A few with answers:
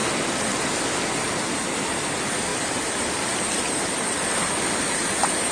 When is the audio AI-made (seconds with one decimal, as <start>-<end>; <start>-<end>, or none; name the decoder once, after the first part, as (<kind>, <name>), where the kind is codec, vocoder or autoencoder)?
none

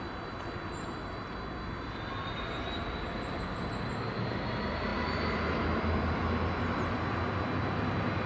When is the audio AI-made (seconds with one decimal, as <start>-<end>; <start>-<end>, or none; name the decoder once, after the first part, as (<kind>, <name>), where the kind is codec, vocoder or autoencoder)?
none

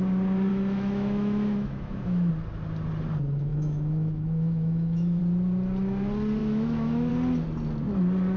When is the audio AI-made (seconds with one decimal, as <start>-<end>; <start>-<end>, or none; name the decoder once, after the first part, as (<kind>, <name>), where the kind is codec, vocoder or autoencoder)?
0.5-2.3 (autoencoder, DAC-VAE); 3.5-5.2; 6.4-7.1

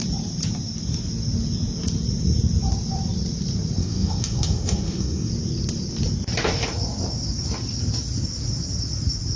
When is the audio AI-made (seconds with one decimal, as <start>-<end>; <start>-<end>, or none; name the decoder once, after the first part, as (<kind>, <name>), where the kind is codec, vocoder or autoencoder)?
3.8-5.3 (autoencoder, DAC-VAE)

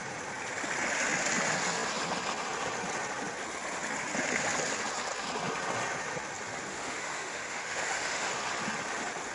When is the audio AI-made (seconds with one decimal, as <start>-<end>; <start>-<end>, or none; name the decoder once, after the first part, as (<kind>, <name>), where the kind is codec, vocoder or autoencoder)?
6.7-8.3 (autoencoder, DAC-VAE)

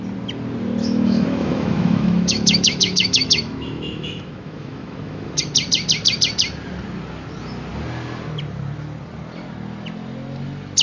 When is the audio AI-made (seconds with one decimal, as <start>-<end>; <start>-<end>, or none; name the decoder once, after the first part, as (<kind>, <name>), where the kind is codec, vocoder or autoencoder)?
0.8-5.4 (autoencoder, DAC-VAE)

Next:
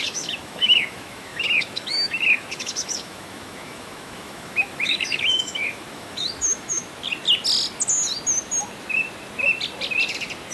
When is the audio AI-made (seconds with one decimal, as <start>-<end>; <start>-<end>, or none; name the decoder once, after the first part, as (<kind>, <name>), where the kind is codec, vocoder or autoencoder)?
0.0-6.8 (autoencoder, DAC-VAE)